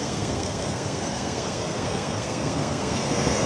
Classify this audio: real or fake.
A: fake